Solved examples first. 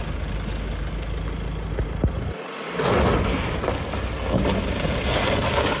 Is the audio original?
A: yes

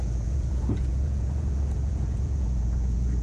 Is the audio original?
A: no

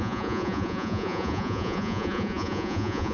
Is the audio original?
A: no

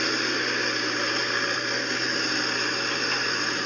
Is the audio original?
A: yes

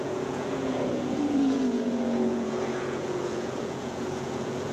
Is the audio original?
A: no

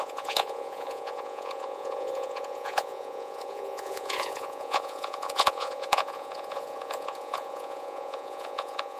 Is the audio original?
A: no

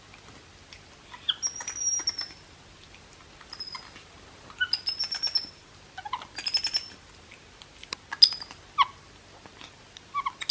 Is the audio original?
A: yes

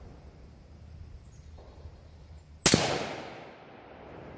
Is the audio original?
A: yes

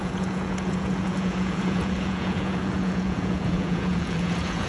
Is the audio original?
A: no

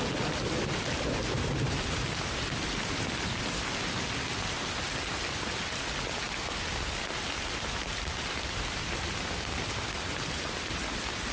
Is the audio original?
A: yes